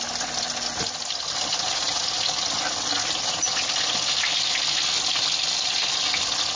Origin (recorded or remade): recorded